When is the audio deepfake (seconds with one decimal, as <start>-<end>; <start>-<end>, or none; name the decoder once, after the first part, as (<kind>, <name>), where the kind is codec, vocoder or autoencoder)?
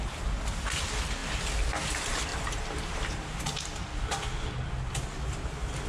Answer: 2.3-3.4 (vocoder, BigVGAN v2)